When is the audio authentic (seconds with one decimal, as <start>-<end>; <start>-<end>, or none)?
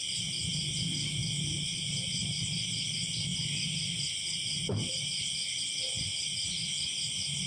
0.0-7.5